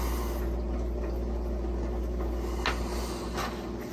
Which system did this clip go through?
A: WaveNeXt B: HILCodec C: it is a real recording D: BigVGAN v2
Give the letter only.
C